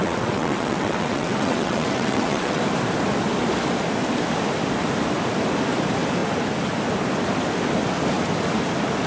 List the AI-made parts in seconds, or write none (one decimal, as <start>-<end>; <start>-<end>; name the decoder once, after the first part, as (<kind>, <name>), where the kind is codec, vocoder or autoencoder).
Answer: 0.0-2.6 (vocoder, WaveNeXt)